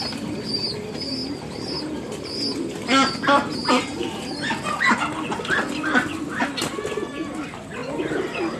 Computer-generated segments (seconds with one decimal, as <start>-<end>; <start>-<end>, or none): none